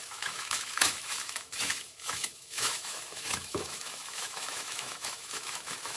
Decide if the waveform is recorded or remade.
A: remade